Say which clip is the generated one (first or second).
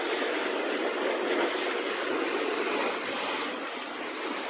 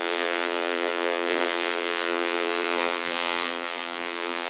second